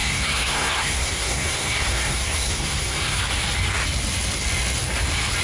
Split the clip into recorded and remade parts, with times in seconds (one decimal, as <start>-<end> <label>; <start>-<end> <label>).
0.0-3.2 remade; 3.2-5.4 recorded